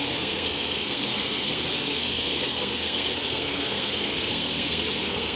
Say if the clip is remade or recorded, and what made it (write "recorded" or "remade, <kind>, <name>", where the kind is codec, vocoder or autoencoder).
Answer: remade, codec, SNAC